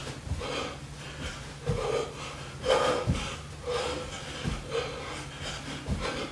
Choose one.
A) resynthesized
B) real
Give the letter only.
B